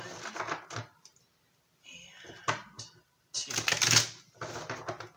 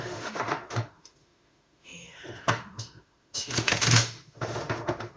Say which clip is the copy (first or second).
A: second